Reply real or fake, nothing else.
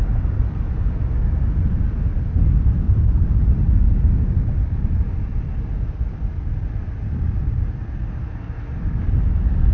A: real